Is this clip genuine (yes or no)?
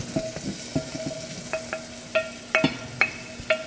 yes